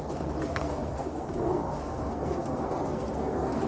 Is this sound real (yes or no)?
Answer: no